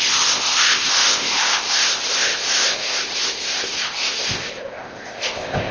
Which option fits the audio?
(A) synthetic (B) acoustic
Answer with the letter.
A